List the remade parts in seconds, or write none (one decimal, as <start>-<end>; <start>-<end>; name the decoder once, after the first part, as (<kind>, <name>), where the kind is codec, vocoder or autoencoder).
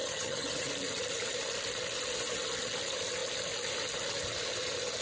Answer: 0.0-0.7 (vocoder, HiFi-GAN)